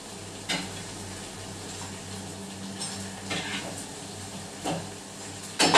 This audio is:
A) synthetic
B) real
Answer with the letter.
B